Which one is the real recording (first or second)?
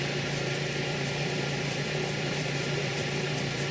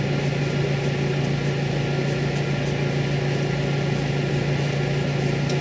second